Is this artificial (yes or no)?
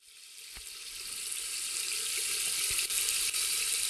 no